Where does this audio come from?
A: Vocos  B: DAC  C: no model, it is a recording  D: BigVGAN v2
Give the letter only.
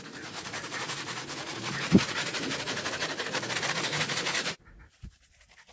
A